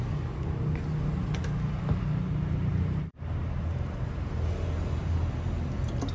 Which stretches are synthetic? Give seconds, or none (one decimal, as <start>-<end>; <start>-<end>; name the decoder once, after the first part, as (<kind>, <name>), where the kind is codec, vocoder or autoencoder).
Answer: 2.7-3.3 (vocoder, BigVGAN v2)